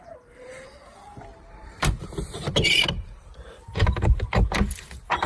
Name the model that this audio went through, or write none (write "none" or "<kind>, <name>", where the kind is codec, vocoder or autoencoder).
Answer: vocoder, BigVGAN v2